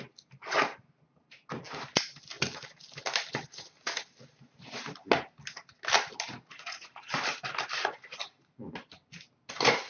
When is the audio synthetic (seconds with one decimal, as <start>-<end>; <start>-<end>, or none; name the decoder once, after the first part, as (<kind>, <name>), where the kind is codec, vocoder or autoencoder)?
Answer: 6.3-6.9 (vocoder, Vocos)